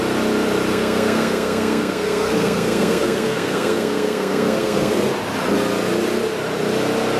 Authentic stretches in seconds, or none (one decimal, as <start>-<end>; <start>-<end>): 0.0-0.7; 5.0-7.2